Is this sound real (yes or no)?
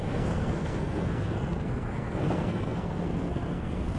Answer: no